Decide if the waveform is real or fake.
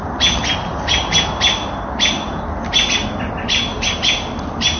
real